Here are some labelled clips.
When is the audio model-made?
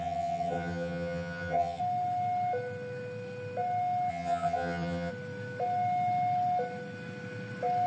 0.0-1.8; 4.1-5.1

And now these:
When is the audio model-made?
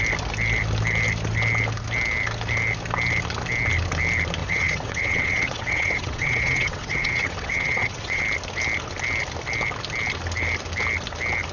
4.4-8.2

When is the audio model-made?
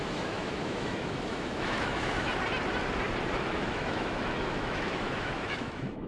0.0-2.3; 3.5-6.1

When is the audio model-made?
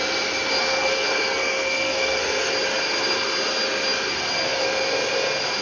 0.6-2.5